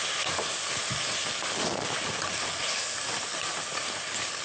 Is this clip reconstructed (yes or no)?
no